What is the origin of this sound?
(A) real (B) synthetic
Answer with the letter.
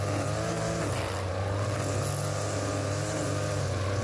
A